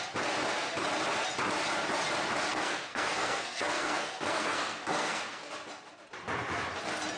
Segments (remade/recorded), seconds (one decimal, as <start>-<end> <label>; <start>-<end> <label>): 0.0-2.5 recorded; 2.5-5.5 remade; 5.5-7.2 recorded